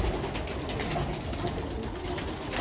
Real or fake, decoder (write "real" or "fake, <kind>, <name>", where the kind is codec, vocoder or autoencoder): real